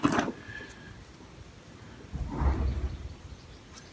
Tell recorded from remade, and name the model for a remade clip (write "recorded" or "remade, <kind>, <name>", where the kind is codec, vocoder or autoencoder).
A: recorded